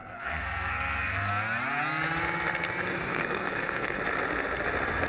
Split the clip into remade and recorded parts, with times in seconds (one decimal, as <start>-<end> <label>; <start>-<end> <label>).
0.0-1.3 remade; 1.3-2.9 recorded; 2.9-4.0 remade; 4.0-5.1 recorded